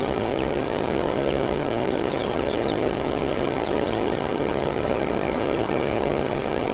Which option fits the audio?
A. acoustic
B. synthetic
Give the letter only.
B